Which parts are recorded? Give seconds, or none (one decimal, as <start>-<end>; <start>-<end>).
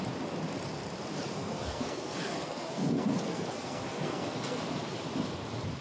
0.0-1.3; 4.6-5.8